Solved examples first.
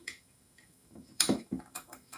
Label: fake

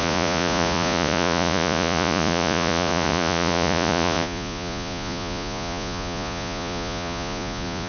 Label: fake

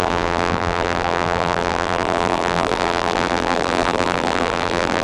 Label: fake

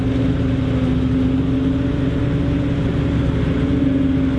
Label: real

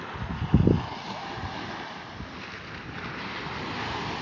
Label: real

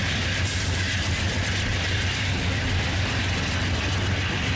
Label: real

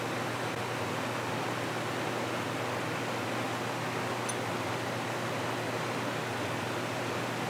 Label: real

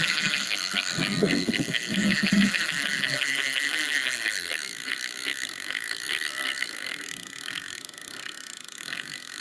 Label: fake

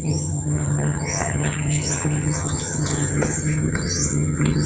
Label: fake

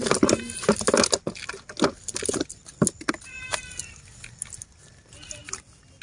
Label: real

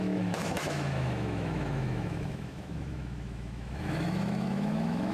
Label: fake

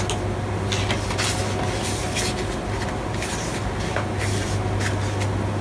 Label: real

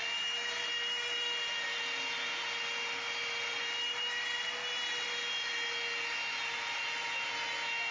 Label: real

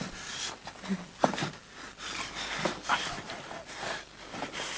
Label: real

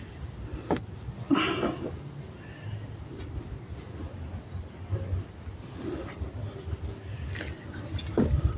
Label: real